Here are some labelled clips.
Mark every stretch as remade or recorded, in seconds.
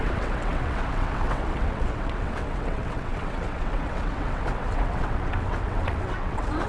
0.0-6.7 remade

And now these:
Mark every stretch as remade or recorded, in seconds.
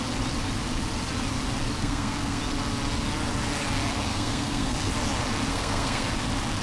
0.0-1.8 recorded; 1.8-2.4 remade; 2.4-4.1 recorded; 4.1-4.9 remade; 4.9-5.5 recorded; 5.5-6.1 remade; 6.1-6.6 recorded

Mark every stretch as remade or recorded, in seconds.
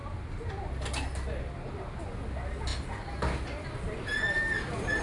0.0-0.5 remade; 0.5-5.0 recorded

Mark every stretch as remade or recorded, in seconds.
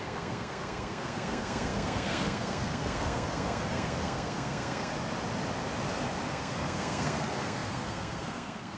0.0-4.9 remade; 4.9-6.3 recorded; 6.3-8.8 remade